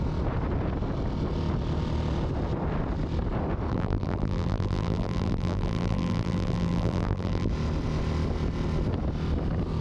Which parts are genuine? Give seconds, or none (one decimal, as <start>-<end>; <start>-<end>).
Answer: 0.0-3.7; 7.5-9.8